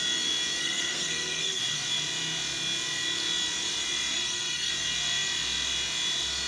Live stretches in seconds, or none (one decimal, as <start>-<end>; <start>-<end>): 0.0-0.6; 1.6-4.1; 4.7-6.5